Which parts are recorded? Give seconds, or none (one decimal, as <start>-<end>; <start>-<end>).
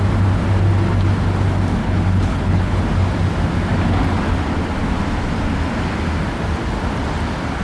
0.0-1.8; 2.8-7.6